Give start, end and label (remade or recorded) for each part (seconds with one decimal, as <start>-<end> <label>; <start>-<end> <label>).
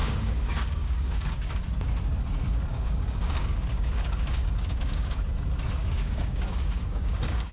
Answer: 0.0-1.6 remade; 1.6-2.7 recorded; 2.7-5.2 remade; 5.2-5.8 recorded; 5.8-7.5 remade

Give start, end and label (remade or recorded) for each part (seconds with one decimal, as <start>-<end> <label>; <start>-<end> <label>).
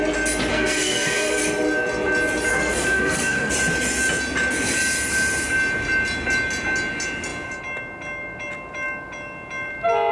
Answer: 0.0-0.5 recorded; 0.5-1.4 remade; 1.4-2.5 recorded; 2.5-3.5 remade; 3.5-10.1 recorded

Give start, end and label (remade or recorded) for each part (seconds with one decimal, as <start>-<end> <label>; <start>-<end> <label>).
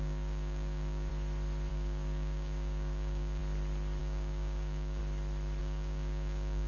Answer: 0.0-1.1 remade; 1.1-1.7 recorded; 1.7-3.4 remade; 3.4-4.0 recorded; 4.0-5.0 remade; 5.0-5.6 recorded; 5.6-6.7 remade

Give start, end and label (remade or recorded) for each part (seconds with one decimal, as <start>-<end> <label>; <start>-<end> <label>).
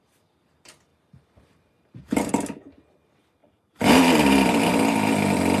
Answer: 0.0-0.9 recorded; 0.9-2.3 remade; 2.3-3.4 recorded; 3.4-4.7 remade; 4.7-5.6 recorded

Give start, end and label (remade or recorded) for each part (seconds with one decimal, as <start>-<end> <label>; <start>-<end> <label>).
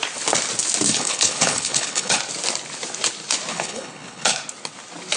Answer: 0.0-0.9 recorded; 0.9-2.2 remade; 2.2-3.5 recorded; 3.5-4.4 remade; 4.4-5.2 recorded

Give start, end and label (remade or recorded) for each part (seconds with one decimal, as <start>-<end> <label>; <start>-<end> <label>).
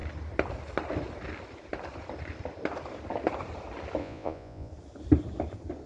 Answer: 0.0-4.0 recorded; 4.0-4.7 remade; 4.7-5.9 recorded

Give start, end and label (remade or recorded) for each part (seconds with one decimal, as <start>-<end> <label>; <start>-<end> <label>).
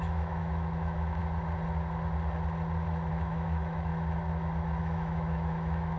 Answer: 0.0-1.2 remade; 1.2-3.1 recorded; 3.1-3.9 remade; 3.9-4.8 recorded; 4.8-6.0 remade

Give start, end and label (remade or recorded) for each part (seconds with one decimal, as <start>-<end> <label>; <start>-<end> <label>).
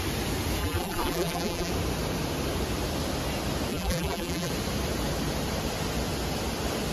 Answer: 0.0-0.6 recorded; 0.6-1.7 remade; 1.7-3.7 recorded; 3.7-4.5 remade; 4.5-6.9 recorded